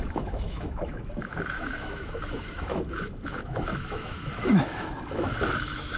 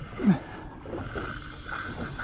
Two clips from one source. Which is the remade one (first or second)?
first